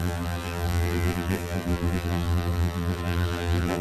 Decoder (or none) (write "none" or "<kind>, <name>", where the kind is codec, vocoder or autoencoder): vocoder, BigVGAN v2